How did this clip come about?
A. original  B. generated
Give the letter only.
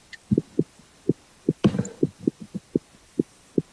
B